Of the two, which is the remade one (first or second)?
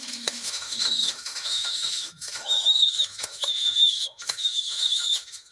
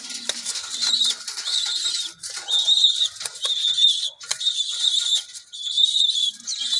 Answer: first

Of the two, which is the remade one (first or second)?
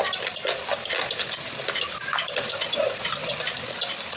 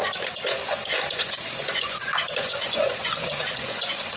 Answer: second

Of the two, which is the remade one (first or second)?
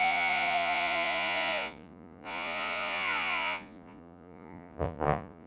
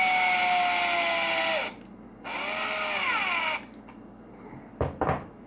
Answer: first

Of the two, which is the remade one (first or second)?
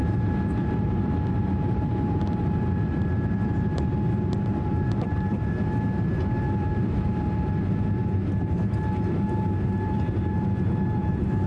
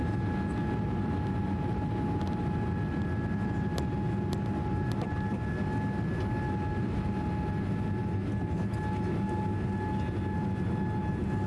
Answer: first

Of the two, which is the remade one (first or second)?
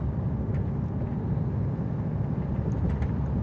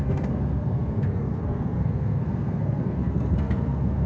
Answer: second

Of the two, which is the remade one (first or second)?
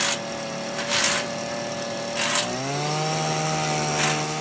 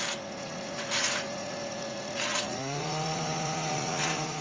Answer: second